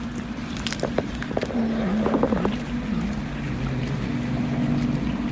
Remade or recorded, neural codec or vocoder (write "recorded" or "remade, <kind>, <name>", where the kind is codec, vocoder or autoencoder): recorded